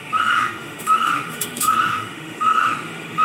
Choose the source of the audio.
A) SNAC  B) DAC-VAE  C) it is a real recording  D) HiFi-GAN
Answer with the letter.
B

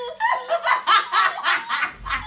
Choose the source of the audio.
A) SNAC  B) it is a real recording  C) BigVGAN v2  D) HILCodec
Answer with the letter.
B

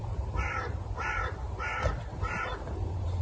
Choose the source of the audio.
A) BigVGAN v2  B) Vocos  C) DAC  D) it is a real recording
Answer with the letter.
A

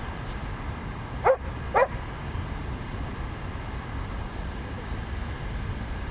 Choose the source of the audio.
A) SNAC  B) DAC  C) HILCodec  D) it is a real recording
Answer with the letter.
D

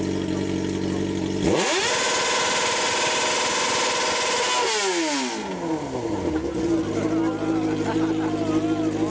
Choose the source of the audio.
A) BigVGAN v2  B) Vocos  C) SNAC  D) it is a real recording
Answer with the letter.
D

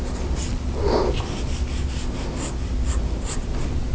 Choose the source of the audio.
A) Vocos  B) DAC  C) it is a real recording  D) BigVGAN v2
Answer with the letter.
C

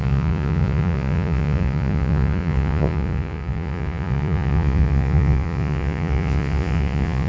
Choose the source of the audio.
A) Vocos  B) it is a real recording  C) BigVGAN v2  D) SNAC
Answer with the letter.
A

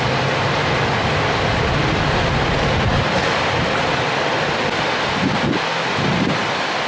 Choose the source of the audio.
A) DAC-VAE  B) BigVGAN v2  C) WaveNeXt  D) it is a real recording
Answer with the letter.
D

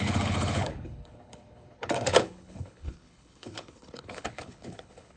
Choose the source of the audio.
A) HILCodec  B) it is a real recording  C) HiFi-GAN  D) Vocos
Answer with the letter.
A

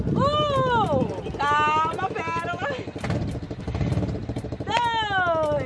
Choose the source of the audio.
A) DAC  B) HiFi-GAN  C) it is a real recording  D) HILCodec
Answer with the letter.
C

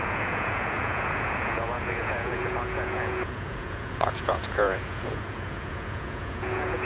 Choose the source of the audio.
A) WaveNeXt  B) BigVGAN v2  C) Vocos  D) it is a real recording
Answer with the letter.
C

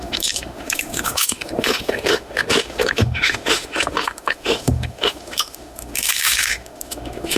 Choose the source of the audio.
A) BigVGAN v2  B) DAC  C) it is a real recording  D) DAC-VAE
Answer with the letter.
D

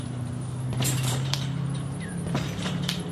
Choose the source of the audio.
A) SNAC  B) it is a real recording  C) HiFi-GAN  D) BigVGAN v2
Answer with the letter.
D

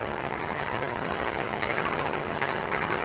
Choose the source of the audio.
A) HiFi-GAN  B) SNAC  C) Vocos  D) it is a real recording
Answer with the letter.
A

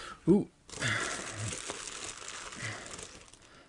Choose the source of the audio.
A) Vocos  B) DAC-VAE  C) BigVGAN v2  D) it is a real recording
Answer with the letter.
D